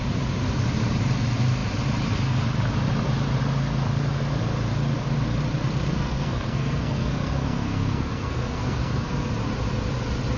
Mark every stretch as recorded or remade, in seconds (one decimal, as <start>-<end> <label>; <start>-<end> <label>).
0.0-5.9 recorded; 5.9-9.3 remade; 9.3-10.4 recorded